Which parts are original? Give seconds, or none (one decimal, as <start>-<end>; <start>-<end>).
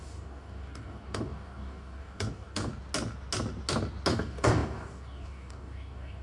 2.7-4.1